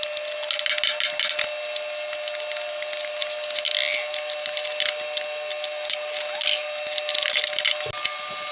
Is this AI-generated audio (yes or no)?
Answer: no